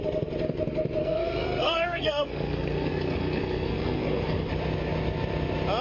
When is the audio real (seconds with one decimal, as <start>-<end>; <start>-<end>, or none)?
0.0-1.0; 4.5-5.8